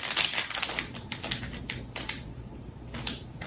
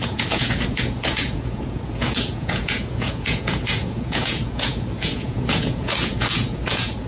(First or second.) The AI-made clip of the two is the second